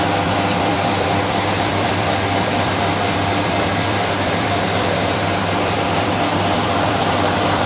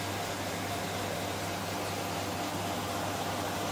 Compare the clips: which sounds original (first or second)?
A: second